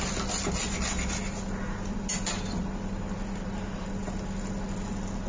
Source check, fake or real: real